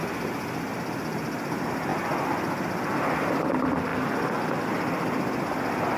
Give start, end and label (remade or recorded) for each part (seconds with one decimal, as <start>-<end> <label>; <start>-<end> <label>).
0.0-6.0 recorded